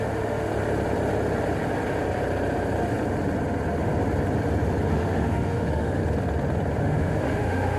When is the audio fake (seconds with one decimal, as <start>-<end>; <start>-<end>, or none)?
0.0-0.5; 4.9-6.0; 6.8-7.8